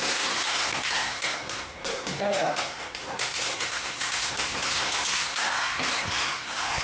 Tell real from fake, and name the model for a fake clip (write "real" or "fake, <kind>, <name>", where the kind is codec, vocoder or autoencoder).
fake, codec, SNAC